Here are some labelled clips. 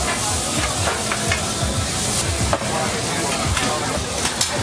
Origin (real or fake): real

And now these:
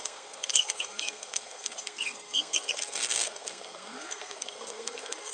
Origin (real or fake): fake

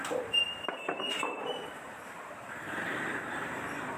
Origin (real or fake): fake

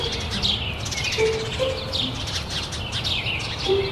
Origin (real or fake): real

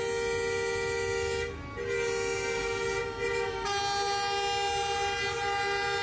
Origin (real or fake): real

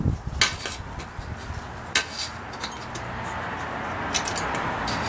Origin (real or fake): real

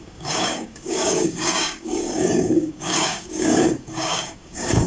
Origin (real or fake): fake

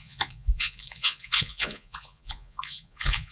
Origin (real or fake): fake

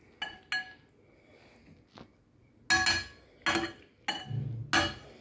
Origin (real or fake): real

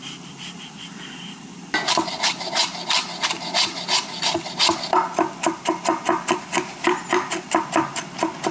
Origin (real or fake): real